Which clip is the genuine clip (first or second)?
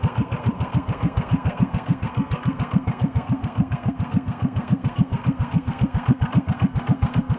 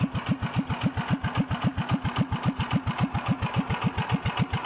second